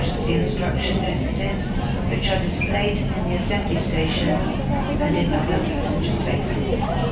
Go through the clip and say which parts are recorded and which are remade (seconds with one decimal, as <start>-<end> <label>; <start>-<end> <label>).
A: 0.0-0.7 recorded; 0.7-1.4 remade; 1.4-7.1 recorded